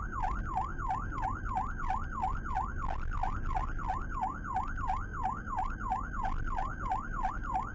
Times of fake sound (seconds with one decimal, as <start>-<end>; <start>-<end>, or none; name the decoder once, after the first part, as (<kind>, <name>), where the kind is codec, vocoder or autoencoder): none